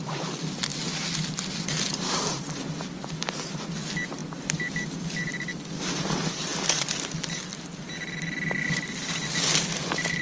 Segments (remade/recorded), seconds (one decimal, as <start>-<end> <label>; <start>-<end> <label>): 0.0-6.5 recorded; 6.5-8.5 remade; 8.5-10.2 recorded